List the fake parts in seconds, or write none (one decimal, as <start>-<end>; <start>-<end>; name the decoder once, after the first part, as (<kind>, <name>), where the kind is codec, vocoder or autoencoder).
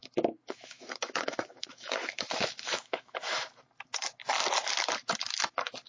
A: 0.0-3.5 (autoencoder, DAC-VAE)